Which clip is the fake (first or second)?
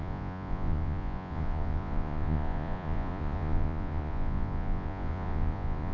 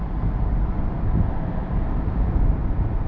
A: first